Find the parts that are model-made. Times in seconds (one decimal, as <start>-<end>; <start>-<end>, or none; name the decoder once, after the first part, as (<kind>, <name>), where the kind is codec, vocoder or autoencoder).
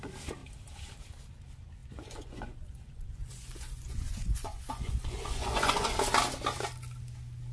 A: 1.8-5.9 (vocoder, Vocos)